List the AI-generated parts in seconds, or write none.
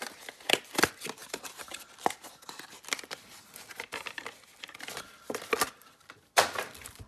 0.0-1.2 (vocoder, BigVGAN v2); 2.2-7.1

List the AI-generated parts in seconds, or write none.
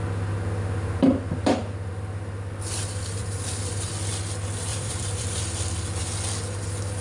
3.2-3.9 (vocoder, BigVGAN v2); 4.7-5.4